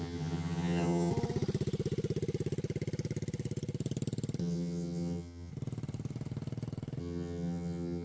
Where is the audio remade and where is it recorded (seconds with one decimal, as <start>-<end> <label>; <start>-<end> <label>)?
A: 0.0-1.1 remade; 1.1-4.4 recorded; 4.4-5.5 remade; 5.5-7.0 recorded; 7.0-8.0 remade